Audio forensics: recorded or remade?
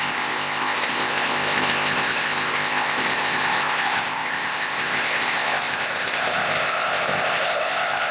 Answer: remade